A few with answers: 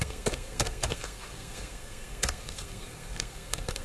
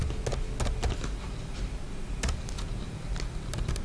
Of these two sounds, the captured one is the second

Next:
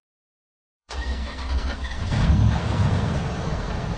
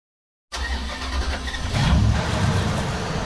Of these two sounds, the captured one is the second